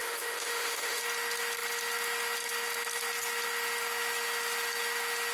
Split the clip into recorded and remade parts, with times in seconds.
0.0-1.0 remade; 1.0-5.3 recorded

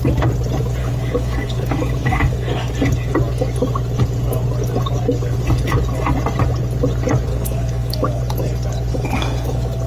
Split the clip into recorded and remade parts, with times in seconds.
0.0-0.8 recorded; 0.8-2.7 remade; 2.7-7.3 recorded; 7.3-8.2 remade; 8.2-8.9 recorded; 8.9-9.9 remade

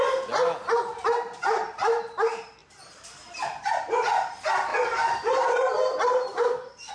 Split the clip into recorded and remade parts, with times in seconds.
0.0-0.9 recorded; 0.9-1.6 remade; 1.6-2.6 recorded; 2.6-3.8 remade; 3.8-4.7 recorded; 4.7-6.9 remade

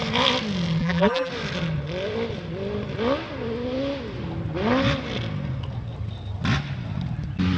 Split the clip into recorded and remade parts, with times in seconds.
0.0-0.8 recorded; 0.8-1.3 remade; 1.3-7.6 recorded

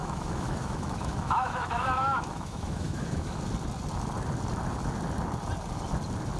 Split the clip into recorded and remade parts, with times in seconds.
0.0-3.4 remade; 3.4-6.4 recorded

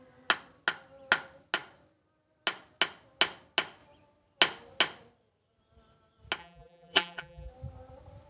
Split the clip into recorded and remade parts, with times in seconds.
0.0-6.4 recorded; 6.4-7.5 remade; 7.5-8.3 recorded

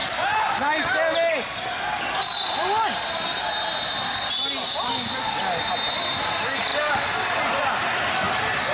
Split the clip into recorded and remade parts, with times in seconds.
0.0-8.7 recorded